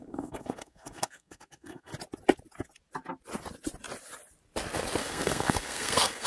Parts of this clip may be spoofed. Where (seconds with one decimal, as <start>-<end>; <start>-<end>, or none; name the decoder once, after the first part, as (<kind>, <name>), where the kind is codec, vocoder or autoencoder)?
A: 0.0-1.9 (codec, SNAC); 5.0-6.3